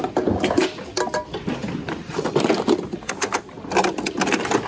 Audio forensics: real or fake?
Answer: real